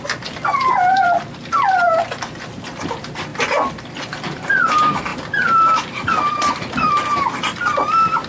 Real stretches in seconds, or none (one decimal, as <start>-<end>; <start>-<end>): 0.0-8.3